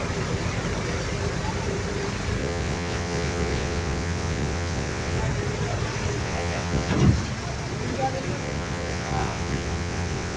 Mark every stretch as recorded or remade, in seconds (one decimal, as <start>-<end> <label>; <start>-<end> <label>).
0.0-2.4 recorded; 2.4-5.2 remade; 5.2-6.2 recorded; 6.2-6.9 remade; 6.9-8.4 recorded; 8.4-10.4 remade